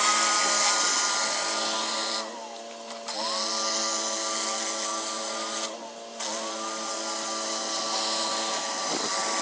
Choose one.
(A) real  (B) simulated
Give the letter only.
A